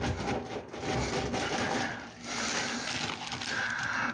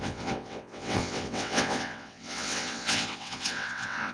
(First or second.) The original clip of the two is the first